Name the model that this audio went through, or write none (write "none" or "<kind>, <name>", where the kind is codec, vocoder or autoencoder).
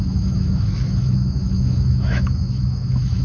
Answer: autoencoder, DAC-VAE